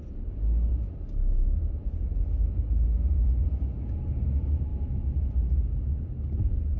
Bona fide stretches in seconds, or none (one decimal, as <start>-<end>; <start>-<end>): 0.0-0.7; 2.4-6.8